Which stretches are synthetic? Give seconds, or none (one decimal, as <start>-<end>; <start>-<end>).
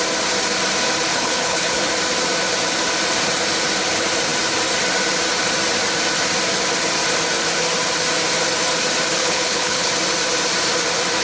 1.1-1.9; 9.2-9.9